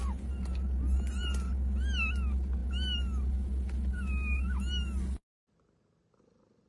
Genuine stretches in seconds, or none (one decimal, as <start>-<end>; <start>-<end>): 0.0-6.7